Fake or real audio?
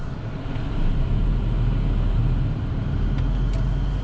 real